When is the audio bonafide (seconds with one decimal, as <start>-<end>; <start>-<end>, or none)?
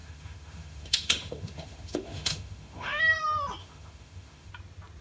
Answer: 3.0-3.6; 4.5-5.0